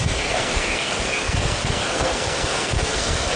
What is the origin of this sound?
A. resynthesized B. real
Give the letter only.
A